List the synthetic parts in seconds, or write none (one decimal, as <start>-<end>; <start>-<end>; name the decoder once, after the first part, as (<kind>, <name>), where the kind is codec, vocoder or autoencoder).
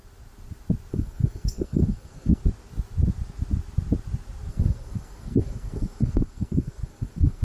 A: 0.9-2.4 (codec, SNAC); 4.5-7.4